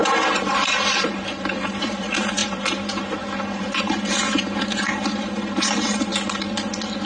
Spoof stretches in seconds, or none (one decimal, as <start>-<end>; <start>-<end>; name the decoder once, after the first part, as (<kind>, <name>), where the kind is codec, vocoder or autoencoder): 0.0-6.1 (vocoder, BigVGAN v2)